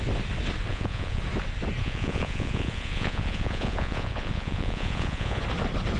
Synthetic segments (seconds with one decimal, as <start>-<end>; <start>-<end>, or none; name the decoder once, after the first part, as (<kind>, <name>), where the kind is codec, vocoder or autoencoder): 0.7-1.2 (vocoder, Vocos); 1.8-5.4